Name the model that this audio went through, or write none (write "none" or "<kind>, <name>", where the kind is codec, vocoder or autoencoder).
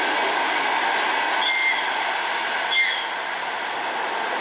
none